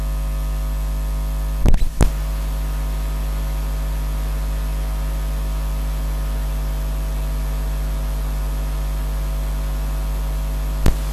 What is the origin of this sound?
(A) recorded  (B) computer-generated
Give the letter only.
A